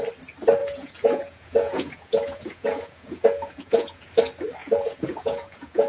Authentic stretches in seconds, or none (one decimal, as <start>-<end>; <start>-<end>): 0.0-0.6; 4.1-4.6